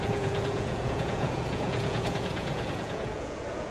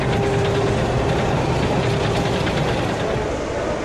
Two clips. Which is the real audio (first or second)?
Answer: second